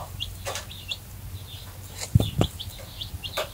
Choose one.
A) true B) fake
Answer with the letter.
A